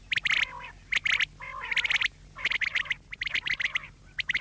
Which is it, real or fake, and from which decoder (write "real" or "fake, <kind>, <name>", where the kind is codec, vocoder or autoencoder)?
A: real